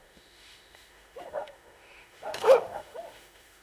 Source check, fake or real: fake